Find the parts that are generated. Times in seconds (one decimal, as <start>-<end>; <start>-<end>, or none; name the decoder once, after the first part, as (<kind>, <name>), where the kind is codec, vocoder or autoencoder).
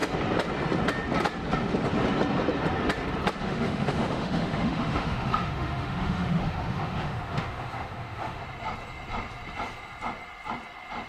3.4-8.4 (autoencoder, DAC-VAE)